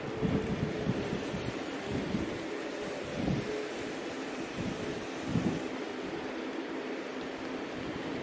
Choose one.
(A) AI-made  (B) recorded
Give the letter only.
A